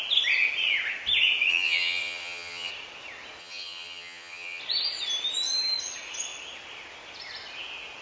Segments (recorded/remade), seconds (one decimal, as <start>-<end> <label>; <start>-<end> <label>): 0.0-1.5 recorded; 1.5-2.7 remade; 2.7-3.4 recorded; 3.4-4.6 remade; 4.6-8.0 recorded